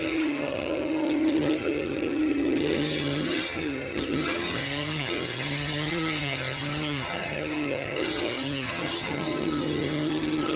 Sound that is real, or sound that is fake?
fake